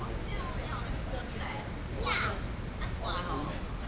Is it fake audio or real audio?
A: real